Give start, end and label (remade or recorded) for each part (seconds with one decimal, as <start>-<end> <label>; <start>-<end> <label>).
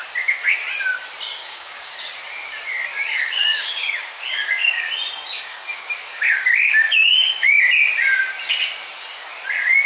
0.0-1.4 recorded; 1.4-1.9 remade; 1.9-2.9 recorded; 2.9-4.9 remade; 4.9-5.5 recorded; 5.5-7.6 remade; 7.6-9.9 recorded